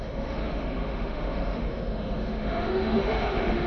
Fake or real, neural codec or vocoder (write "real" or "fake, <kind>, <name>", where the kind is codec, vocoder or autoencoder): fake, autoencoder, DAC-VAE